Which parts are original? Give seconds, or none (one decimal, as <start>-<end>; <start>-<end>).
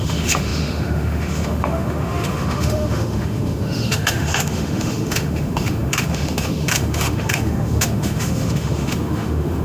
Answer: none